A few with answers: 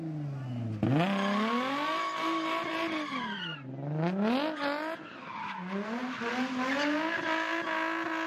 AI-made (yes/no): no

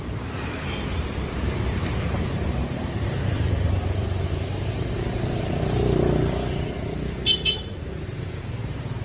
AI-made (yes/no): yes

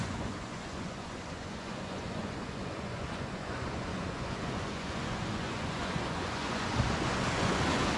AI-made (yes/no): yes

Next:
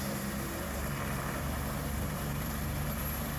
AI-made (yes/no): yes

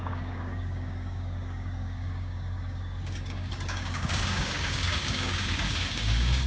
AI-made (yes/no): yes